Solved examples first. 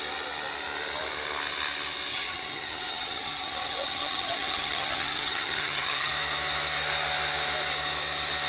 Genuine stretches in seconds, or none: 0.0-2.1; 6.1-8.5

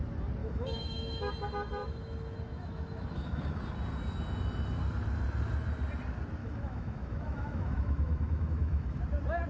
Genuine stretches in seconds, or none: 0.0-0.4; 1.3-1.8; 3.6-6.4; 9.0-9.5